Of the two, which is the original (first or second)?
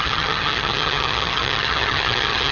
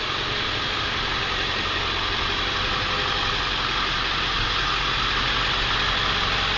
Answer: second